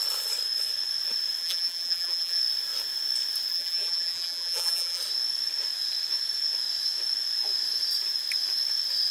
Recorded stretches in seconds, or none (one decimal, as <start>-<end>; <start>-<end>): 0.0-1.4; 2.4-3.5; 5.0-9.1